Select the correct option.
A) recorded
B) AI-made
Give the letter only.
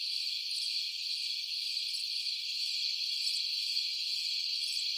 B